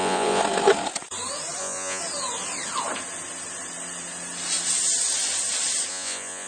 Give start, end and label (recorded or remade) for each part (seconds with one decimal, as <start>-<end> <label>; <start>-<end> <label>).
0.0-0.4 remade; 0.4-1.6 recorded; 1.6-2.0 remade; 2.0-5.9 recorded; 5.9-6.5 remade